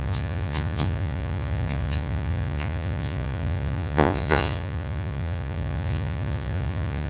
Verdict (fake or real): fake